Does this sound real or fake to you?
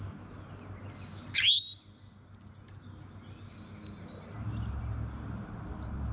real